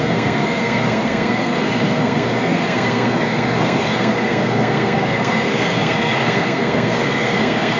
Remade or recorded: remade